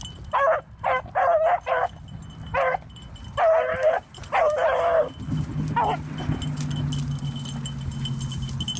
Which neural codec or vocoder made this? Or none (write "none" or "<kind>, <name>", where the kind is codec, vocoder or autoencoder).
none